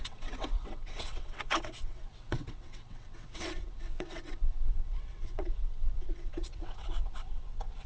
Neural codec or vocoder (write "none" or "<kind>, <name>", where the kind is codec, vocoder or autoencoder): vocoder, WaveNeXt